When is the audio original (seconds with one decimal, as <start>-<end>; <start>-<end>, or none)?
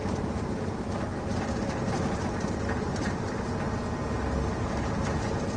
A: 3.4-5.6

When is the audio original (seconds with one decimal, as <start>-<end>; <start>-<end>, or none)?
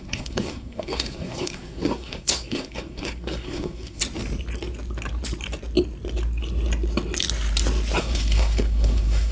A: 4.0-8.0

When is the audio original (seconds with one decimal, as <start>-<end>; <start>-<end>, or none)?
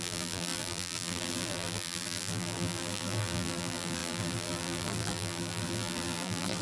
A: none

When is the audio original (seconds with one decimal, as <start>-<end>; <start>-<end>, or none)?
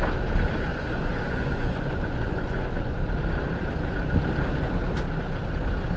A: 0.0-0.7; 3.0-6.0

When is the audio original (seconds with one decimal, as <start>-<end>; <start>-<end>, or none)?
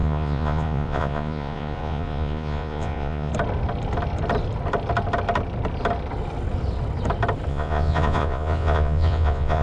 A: 3.3-7.5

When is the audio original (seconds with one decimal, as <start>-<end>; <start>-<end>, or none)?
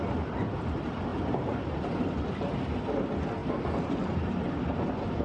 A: 0.0-1.1; 2.0-3.4; 4.3-5.2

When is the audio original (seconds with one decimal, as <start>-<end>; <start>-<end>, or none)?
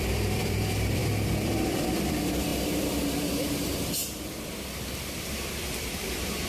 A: 2.5-3.2